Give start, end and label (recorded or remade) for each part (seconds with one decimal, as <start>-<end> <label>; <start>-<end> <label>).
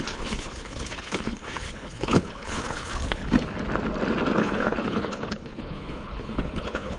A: 0.0-3.2 remade; 3.2-4.4 recorded; 4.4-7.0 remade